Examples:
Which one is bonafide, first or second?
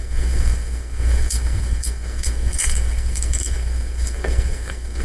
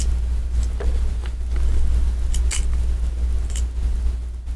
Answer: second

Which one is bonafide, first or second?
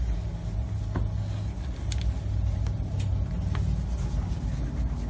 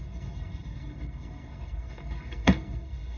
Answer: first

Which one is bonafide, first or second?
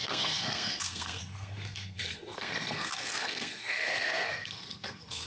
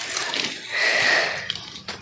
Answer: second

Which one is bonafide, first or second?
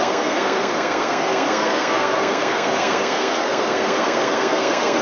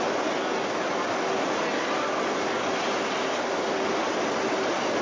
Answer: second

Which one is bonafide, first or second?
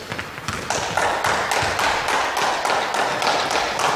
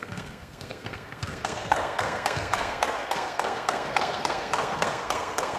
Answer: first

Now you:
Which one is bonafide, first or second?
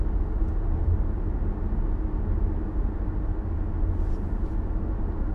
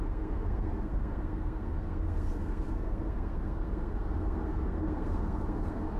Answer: first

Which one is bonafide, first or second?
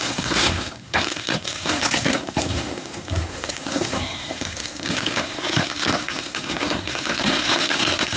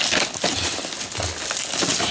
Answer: second